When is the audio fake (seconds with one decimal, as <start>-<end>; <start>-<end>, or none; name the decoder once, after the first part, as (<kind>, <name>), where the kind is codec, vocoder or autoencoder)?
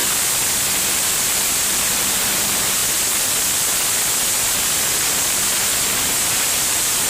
0.8-2.8 (vocoder, BigVGAN v2); 6.4-7.1